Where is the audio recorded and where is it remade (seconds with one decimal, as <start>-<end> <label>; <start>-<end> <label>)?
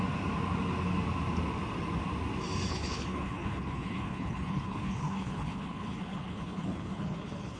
0.0-2.7 recorded; 2.7-7.6 remade